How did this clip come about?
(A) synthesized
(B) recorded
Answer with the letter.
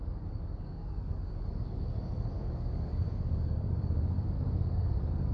A